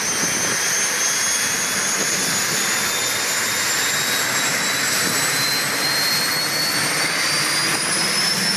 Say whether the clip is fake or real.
real